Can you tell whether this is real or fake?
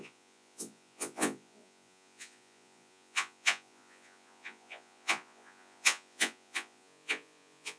fake